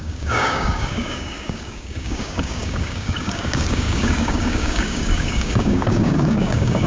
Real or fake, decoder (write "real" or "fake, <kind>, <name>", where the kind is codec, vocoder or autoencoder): fake, codec, DAC